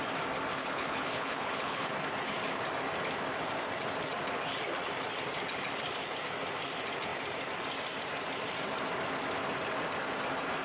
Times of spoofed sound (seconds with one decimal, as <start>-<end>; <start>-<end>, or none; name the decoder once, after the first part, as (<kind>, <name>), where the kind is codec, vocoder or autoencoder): 0.6-1.9 (codec, HILCodec)